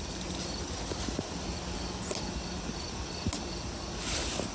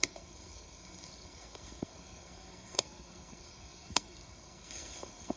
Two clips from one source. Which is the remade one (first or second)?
second